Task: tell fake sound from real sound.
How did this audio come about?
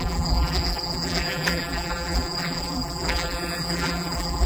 fake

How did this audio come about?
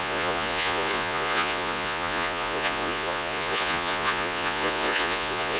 fake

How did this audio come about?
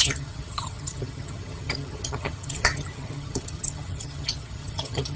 fake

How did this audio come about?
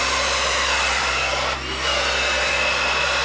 real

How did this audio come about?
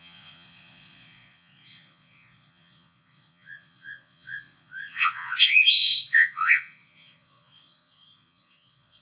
fake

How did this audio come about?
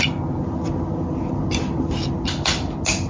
real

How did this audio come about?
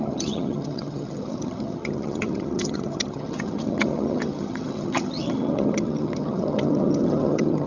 fake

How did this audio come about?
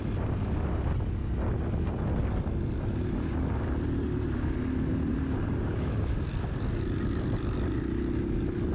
real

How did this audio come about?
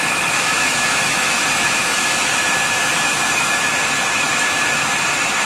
fake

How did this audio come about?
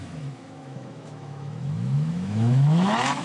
fake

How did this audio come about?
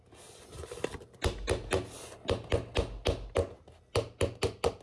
real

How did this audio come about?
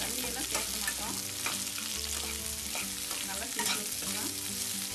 real